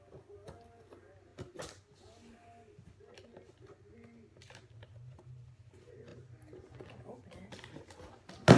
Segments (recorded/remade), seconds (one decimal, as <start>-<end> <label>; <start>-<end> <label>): 0.0-8.6 recorded